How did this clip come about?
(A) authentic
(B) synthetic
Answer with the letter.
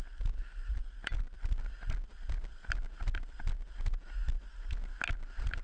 A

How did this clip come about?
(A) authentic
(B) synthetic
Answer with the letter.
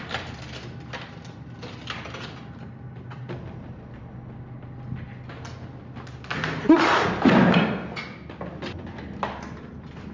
A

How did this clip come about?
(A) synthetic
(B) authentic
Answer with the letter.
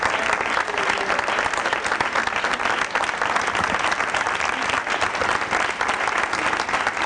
B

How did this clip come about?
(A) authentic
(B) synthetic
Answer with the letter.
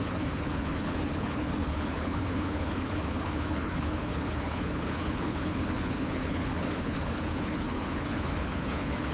B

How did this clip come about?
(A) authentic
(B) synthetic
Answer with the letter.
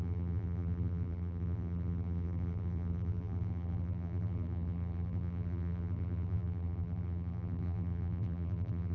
B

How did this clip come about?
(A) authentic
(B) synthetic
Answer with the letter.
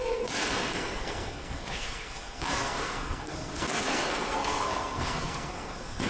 B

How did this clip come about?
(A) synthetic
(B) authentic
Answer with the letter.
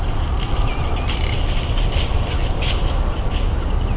B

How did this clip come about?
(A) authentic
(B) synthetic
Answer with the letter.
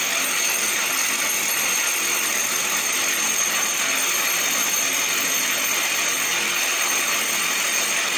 A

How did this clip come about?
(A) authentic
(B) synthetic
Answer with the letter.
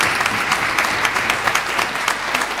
A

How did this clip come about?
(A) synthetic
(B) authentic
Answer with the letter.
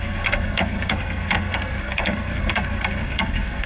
A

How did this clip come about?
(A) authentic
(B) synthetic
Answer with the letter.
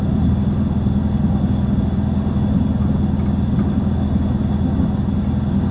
A